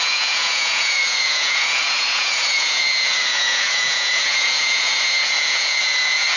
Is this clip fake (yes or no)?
yes